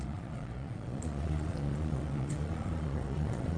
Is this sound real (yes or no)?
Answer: no